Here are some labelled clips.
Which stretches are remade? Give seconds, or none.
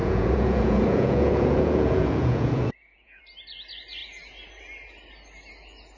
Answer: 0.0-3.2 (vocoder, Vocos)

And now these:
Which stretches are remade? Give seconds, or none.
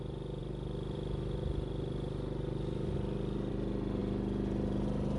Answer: none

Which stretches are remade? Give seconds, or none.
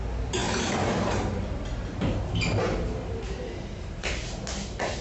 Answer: none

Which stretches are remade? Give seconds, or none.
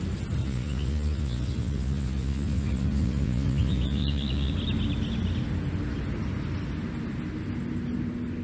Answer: 0.4-4.5 (vocoder, Vocos)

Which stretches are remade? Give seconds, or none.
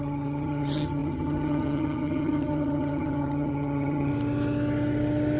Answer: 0.0-4.1 (vocoder, HiFi-GAN)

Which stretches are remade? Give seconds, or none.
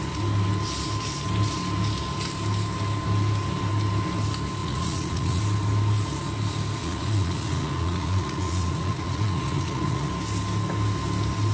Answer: 4.6-5.4 (vocoder, Vocos); 6.8-10.1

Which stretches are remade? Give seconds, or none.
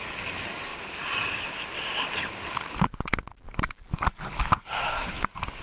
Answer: 0.0-0.7 (codec, DAC); 3.6-5.6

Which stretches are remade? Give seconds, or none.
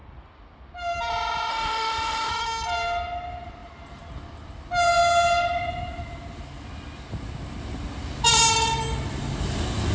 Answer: 1.5-2.3 (autoencoder, DAC-VAE)